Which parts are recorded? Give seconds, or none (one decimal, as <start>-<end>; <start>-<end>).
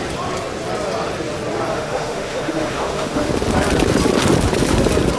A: 0.0-1.7; 3.3-5.2